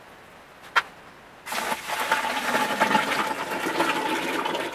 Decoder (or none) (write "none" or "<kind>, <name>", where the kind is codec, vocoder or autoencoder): none